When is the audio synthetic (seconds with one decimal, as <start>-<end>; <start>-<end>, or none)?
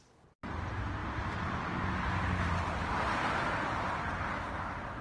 none